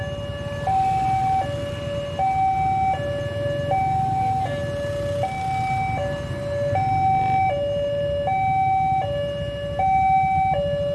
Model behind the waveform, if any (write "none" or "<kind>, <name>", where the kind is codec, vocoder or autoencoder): none